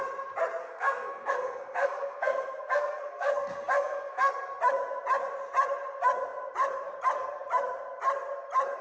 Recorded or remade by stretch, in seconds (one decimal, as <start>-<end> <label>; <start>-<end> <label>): 0.0-0.6 recorded; 0.6-4.3 remade; 4.3-8.8 recorded